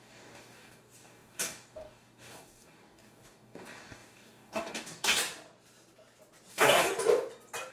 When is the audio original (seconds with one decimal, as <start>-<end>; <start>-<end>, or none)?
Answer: 5.2-6.5; 6.9-7.7